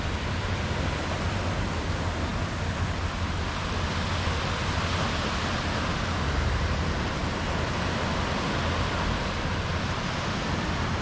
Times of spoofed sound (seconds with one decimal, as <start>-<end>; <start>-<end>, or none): none